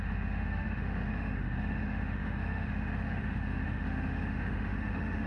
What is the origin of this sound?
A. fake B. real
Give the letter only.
A